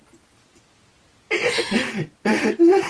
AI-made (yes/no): yes